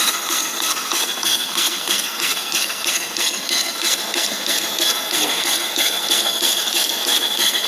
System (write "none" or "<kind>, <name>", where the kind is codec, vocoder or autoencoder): codec, SNAC